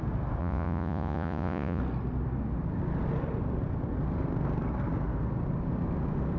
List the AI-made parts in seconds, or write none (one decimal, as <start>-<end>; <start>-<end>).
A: 0.4-1.8